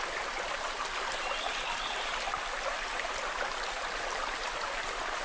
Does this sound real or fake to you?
real